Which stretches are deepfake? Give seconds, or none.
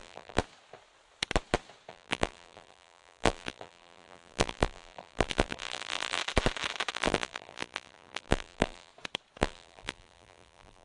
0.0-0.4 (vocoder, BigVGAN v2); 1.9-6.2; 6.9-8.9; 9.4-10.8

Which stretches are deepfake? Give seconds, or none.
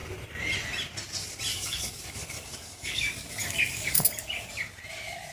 1.5-4.5 (codec, DAC)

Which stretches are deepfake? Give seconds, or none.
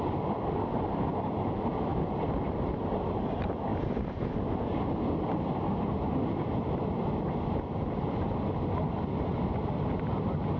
none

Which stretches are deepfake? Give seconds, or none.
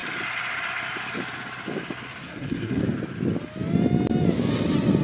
2.2-2.8 (codec, SNAC)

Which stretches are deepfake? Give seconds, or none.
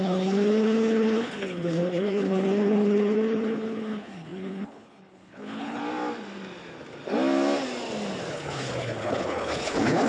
0.0-5.8 (codec, HILCodec); 8.3-10.1